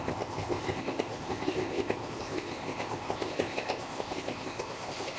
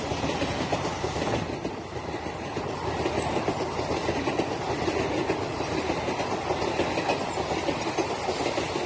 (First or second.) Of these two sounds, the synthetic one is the first